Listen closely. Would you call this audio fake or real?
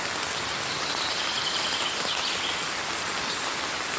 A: real